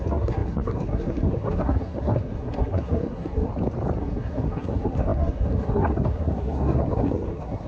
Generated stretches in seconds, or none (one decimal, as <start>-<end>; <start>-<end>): 0.0-3.5; 4.0-7.7